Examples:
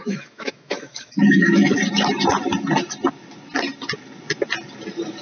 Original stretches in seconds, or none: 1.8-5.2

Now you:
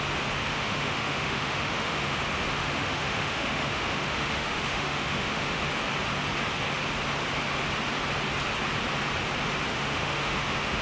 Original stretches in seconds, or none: 0.0-0.5; 2.2-2.6; 5.7-9.7

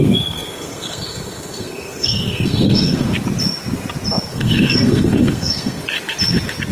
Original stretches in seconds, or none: 3.1-4.3; 5.8-6.7

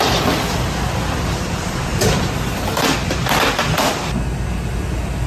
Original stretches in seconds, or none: 0.0-5.3